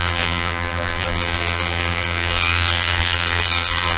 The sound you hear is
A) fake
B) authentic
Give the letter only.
A